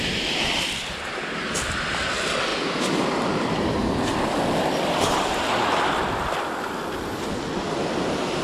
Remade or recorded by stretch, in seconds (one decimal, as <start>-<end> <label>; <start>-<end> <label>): 0.0-8.4 recorded